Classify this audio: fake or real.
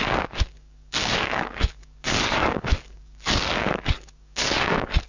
fake